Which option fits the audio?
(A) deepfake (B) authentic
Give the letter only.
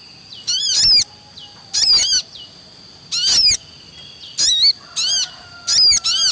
B